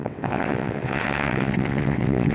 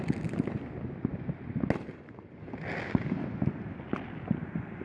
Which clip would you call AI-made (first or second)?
first